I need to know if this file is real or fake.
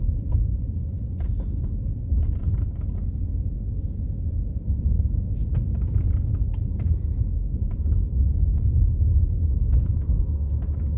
real